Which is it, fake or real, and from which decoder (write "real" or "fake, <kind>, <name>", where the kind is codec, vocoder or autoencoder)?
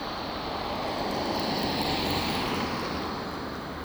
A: real